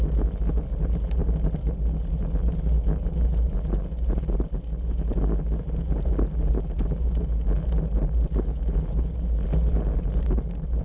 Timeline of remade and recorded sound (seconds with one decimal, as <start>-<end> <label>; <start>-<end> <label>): 0.0-10.8 recorded

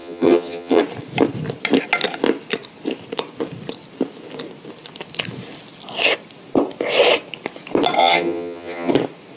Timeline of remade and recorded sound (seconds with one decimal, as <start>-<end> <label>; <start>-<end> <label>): 0.0-0.8 remade; 0.8-8.0 recorded; 8.0-8.9 remade; 8.9-9.4 recorded

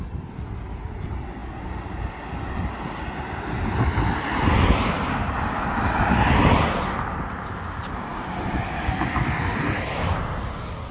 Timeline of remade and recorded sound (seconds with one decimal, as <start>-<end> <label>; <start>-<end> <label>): 0.0-10.9 recorded

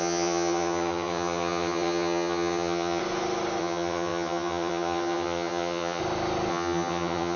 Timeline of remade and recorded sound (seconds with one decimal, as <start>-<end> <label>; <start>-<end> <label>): 0.0-3.0 remade; 3.0-3.6 recorded; 3.6-6.0 remade; 6.0-6.5 recorded; 6.5-7.4 remade

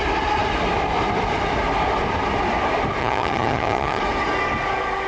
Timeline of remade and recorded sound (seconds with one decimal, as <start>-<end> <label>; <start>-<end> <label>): 0.0-3.0 recorded; 3.0-4.0 remade; 4.0-5.1 recorded

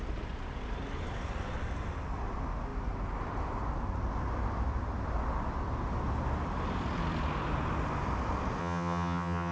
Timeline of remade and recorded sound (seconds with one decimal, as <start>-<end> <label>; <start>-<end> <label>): 0.0-8.6 recorded; 8.6-9.5 remade

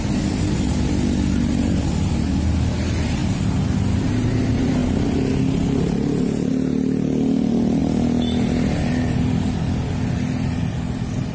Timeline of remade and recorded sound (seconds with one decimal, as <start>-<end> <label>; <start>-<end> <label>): 0.0-11.3 recorded

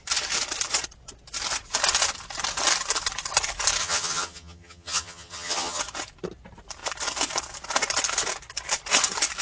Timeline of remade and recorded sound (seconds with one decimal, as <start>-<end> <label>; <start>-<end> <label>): 0.0-3.8 recorded; 3.8-5.8 remade; 5.8-9.4 recorded